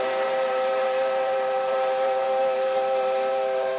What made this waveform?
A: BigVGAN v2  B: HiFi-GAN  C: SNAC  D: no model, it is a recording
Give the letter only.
A